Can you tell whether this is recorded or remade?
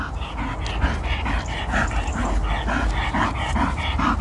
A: recorded